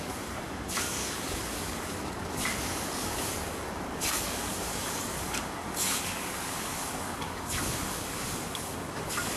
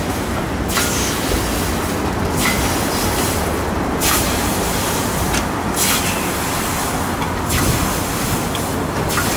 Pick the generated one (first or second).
first